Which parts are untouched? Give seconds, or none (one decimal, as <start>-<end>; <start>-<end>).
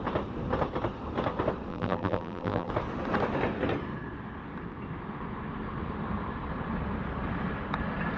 0.0-1.7; 2.7-8.2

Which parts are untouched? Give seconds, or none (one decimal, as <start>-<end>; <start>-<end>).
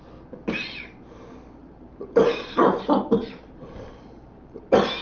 0.0-1.6; 4.6-5.0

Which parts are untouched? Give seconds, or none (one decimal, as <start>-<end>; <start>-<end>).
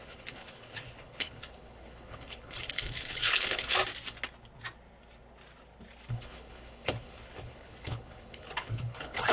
3.8-6.1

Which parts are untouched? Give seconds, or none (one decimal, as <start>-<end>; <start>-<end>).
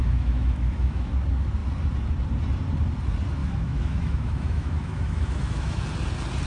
1.1-3.4; 5.8-6.5